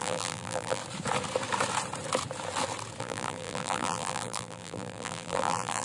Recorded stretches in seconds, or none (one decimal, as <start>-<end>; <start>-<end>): 0.8-3.0